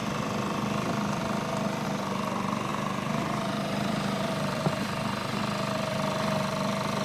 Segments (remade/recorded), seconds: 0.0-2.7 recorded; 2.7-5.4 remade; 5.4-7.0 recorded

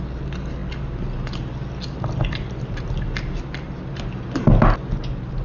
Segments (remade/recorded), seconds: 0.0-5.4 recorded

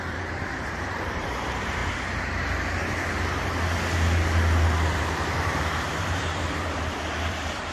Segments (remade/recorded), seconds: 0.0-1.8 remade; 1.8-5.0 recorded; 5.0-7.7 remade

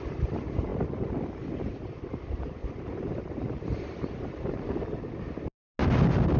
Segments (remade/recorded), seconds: 0.0-2.6 recorded; 2.6-4.9 remade; 4.9-6.4 recorded